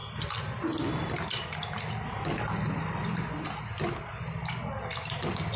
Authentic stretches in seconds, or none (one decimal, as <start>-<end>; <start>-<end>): 0.0-5.6